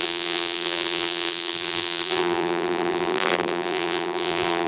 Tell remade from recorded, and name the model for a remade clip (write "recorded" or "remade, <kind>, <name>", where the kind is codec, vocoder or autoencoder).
remade, vocoder, BigVGAN v2